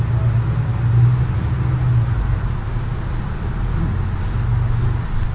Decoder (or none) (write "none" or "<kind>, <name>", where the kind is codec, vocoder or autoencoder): none